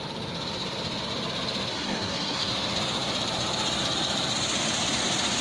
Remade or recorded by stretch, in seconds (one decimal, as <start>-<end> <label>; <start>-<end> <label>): 0.0-1.7 recorded; 1.7-2.5 remade; 2.5-5.4 recorded